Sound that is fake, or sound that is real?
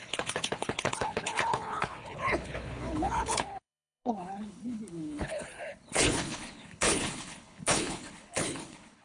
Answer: fake